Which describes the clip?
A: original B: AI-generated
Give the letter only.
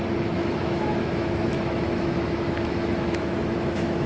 B